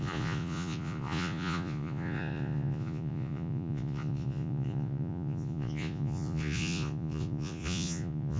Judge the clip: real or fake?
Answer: fake